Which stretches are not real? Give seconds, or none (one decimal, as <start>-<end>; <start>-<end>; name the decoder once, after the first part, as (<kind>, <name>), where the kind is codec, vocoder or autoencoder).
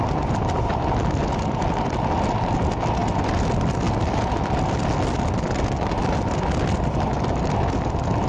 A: none